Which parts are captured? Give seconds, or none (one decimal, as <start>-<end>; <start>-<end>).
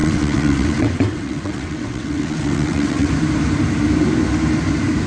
3.1-5.1